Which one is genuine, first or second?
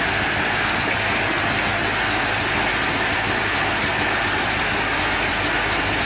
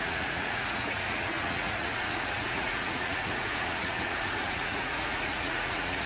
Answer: first